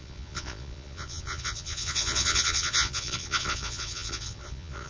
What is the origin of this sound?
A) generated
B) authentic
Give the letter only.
A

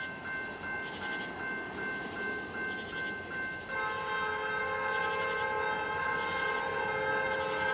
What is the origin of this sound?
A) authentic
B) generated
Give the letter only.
A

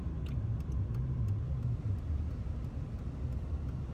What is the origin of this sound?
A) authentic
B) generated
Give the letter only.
A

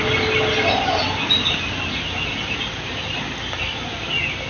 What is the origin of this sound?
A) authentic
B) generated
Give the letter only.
A